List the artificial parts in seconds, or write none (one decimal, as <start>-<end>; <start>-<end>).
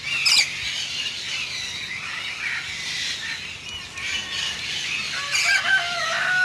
none